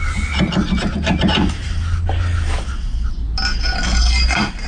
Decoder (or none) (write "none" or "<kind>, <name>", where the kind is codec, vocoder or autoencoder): none